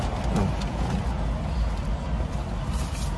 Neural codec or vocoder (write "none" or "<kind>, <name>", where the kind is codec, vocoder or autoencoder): none